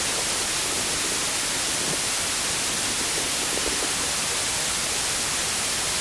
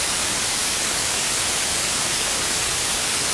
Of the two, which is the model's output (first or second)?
second